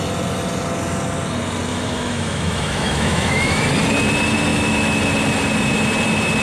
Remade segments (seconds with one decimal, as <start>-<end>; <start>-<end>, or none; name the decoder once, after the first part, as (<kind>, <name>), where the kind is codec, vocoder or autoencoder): 1.7-3.6 (autoencoder, DAC-VAE); 4.5-5.0